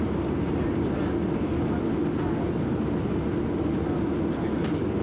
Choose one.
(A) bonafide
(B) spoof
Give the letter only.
A